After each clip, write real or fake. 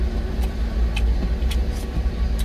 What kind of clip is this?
real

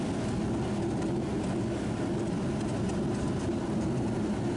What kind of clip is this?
real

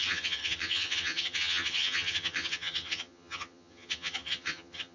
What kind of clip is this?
fake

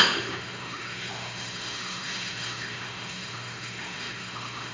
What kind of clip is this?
fake